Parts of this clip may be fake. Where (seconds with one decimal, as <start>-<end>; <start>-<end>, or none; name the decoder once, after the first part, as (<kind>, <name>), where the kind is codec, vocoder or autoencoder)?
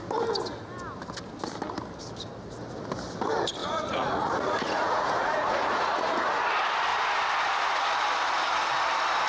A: 3.6-6.4 (vocoder, Vocos)